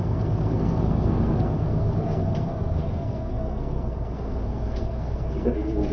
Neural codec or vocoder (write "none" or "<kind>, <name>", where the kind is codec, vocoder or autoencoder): codec, SNAC